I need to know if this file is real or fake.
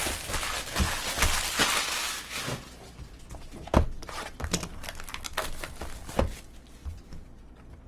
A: real